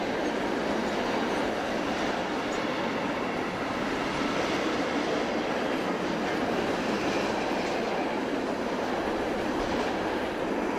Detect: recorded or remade recorded